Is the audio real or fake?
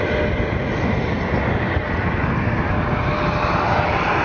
real